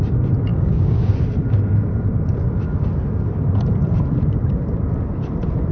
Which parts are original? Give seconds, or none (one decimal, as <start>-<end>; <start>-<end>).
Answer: 0.0-0.5; 1.1-5.7